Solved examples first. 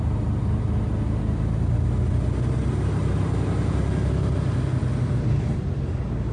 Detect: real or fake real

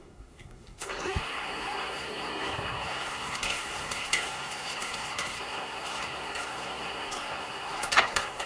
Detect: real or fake fake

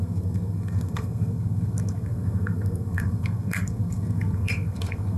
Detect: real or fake fake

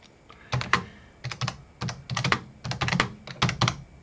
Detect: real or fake real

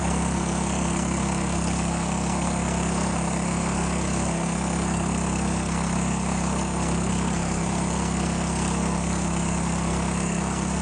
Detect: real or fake fake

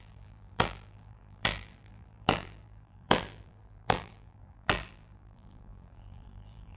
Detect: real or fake fake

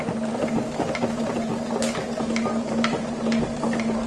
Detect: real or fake real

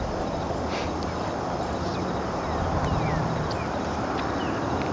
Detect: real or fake real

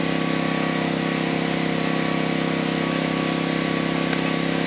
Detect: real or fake real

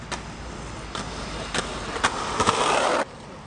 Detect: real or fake real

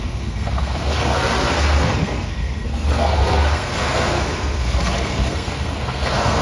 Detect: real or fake fake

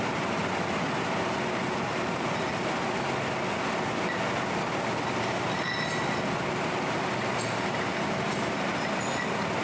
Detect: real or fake real